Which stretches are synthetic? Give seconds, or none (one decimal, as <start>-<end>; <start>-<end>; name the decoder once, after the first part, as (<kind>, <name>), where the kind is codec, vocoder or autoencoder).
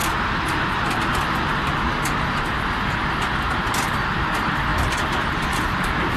none